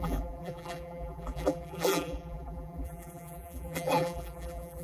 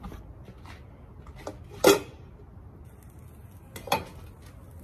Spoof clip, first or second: first